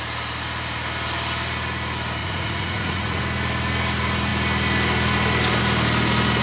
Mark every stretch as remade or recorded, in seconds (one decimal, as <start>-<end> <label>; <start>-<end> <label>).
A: 0.0-2.2 recorded; 2.2-3.2 remade; 3.2-6.4 recorded

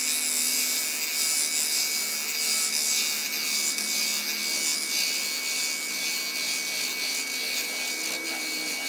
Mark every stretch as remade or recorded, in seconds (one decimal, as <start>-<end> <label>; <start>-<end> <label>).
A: 0.0-8.9 recorded